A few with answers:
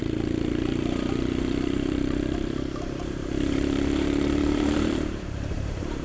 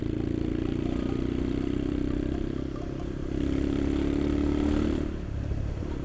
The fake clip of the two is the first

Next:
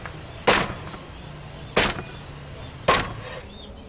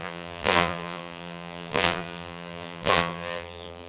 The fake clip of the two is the second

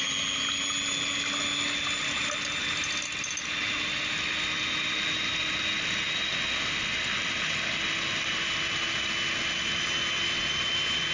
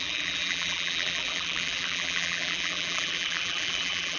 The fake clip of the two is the second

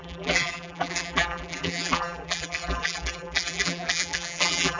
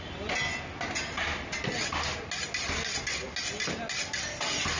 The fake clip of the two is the first